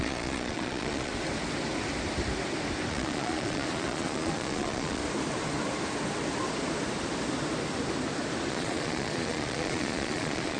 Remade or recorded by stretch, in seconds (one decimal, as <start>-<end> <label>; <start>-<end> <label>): 0.0-1.1 remade; 1.1-2.9 recorded; 2.9-5.0 remade; 5.0-8.5 recorded; 8.5-10.6 remade